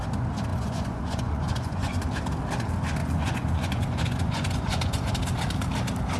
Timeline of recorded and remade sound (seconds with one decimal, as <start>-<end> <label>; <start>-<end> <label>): 0.0-0.5 recorded; 0.5-2.0 remade; 2.0-3.0 recorded; 3.0-5.1 remade; 5.1-6.2 recorded